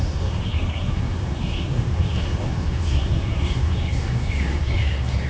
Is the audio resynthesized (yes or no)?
yes